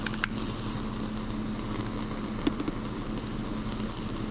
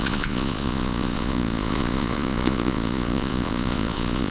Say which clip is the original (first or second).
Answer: first